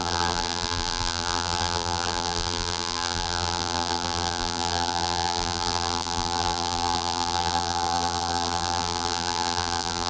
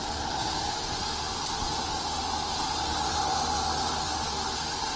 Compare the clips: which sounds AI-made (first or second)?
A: first